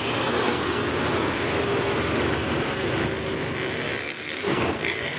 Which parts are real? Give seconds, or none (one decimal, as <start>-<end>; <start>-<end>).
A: 0.9-4.0